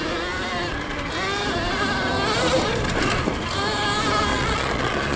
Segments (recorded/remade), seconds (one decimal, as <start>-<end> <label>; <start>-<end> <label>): 0.0-4.3 recorded; 4.3-5.2 remade